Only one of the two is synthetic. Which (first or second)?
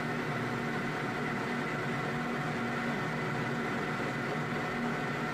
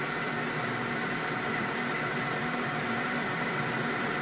second